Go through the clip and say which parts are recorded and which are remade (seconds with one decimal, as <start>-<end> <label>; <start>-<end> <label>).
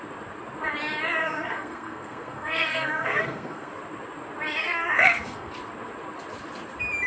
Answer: 0.0-1.2 recorded; 1.2-3.7 remade; 3.7-4.6 recorded; 4.6-5.5 remade; 5.5-7.1 recorded